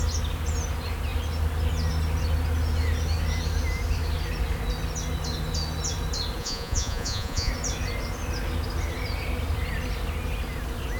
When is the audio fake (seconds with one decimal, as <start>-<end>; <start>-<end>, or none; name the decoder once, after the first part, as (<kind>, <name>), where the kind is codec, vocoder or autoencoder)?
6.4-7.5 (vocoder, Vocos)